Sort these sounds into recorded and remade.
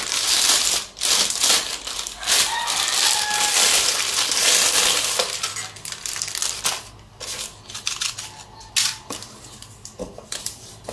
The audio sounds recorded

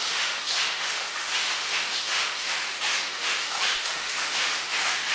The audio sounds remade